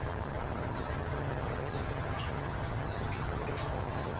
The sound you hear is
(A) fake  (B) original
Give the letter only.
A